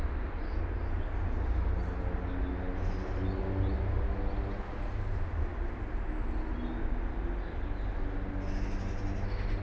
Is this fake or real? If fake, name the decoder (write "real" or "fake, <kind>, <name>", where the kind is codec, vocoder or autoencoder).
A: real